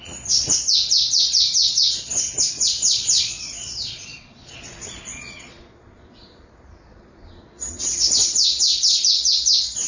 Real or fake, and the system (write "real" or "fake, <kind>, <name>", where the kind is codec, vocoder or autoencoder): fake, vocoder, Vocos